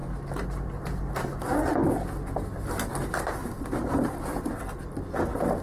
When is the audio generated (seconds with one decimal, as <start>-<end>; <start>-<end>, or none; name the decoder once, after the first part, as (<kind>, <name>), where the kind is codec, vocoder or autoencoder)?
3.4-4.5 (vocoder, BigVGAN v2)